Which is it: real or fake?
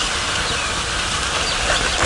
real